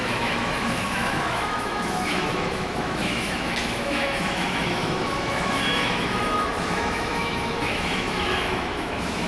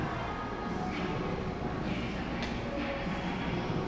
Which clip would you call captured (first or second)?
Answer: second